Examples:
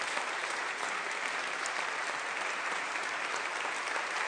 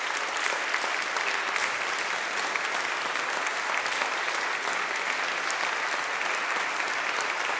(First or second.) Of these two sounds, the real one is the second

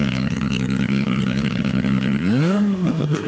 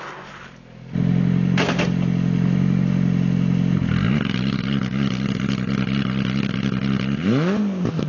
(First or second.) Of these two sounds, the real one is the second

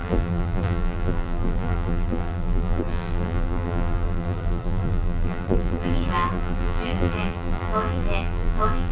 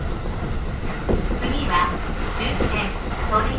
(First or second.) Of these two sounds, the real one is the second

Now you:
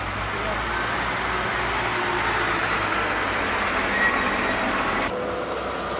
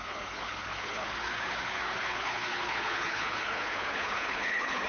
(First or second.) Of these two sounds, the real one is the first